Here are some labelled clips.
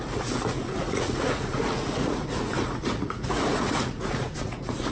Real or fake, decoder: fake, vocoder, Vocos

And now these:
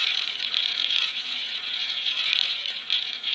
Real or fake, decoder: fake, vocoder, Vocos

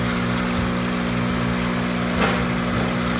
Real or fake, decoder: real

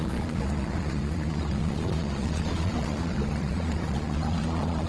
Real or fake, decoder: fake, vocoder, Vocos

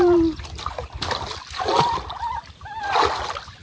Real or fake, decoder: real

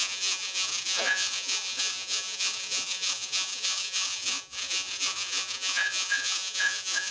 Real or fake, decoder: fake, vocoder, Vocos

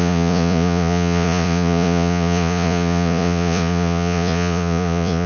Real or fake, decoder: fake, vocoder, Vocos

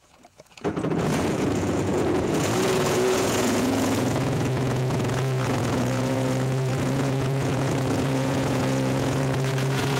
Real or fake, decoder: fake, vocoder, Vocos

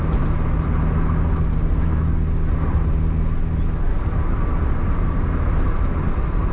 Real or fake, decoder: real